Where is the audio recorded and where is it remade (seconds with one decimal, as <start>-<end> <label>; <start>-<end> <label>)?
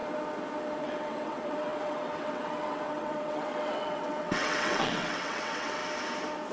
0.0-0.8 recorded; 0.8-5.8 remade; 5.8-6.5 recorded